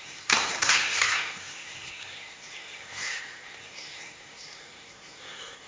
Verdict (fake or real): fake